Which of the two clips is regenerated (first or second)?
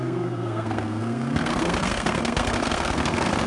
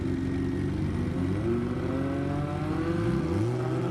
first